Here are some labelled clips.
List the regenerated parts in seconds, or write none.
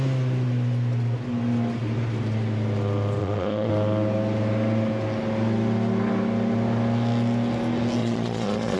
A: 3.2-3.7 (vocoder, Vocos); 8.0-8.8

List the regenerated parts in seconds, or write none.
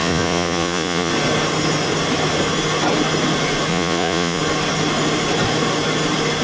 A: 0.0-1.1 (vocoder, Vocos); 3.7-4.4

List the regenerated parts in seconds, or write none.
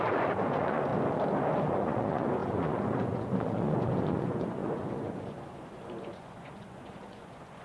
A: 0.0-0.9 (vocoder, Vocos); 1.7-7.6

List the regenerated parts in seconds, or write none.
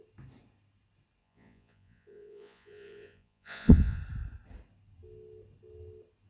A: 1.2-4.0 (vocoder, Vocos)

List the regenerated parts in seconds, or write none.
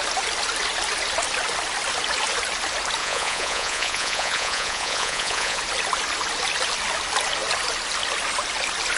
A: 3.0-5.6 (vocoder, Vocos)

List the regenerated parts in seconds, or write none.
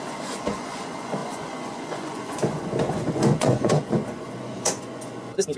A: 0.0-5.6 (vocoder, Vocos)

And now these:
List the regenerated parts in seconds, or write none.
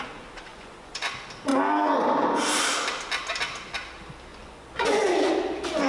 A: 0.5-1.1 (vocoder, Vocos); 4.3-5.3